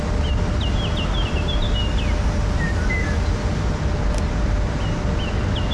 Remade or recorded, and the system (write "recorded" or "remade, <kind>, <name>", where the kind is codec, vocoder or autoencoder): recorded